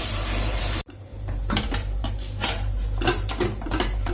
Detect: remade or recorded remade